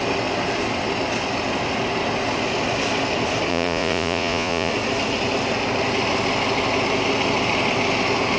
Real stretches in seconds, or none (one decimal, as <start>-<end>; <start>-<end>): 0.0-3.5; 4.7-8.4